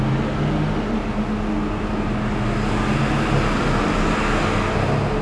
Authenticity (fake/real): real